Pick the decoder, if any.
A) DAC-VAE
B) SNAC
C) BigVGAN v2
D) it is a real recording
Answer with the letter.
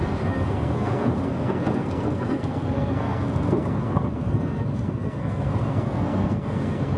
B